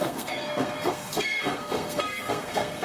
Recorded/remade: remade